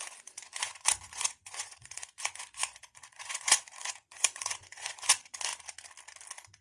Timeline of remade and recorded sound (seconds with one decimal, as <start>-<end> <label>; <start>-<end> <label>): 0.0-5.5 remade; 5.5-6.6 recorded